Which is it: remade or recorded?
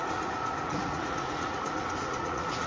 remade